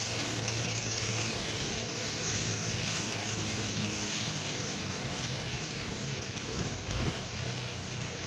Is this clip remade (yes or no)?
yes